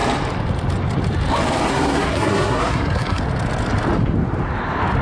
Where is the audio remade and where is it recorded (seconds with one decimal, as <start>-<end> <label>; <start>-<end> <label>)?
0.0-1.7 recorded; 1.7-3.2 remade; 3.2-5.0 recorded